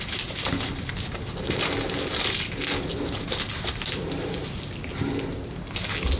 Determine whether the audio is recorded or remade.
recorded